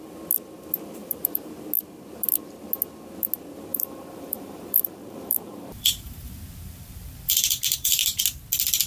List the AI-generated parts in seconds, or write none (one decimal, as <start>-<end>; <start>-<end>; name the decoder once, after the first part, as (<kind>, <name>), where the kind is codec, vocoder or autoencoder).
1.0-1.5 (vocoder, BigVGAN v2); 3.7-8.2

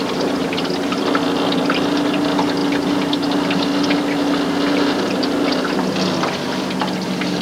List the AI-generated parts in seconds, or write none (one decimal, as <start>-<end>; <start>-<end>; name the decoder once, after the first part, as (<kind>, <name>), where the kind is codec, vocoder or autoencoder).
none